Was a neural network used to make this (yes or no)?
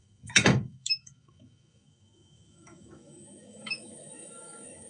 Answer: yes